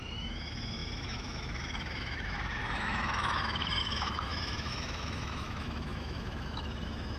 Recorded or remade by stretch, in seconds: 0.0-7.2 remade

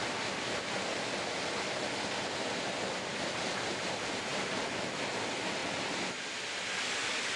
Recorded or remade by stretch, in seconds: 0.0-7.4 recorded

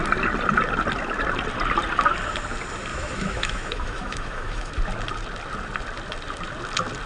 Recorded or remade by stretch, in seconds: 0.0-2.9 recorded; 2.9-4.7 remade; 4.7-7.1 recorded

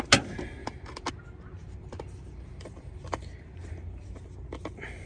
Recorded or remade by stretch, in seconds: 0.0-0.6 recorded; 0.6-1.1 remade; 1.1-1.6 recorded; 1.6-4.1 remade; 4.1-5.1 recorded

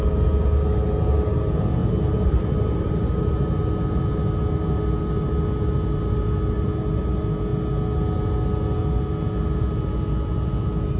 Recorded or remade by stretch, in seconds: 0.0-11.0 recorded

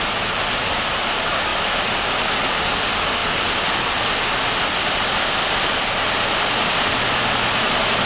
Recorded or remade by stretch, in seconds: 0.0-8.1 recorded

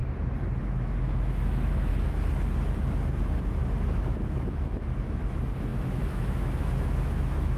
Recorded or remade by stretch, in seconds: 0.0-0.6 recorded; 0.6-1.9 remade; 1.9-4.1 recorded; 4.1-7.6 remade